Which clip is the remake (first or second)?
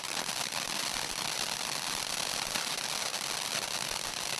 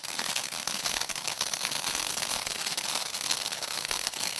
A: second